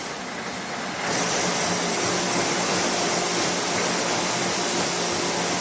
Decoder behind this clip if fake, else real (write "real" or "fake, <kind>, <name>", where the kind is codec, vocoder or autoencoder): real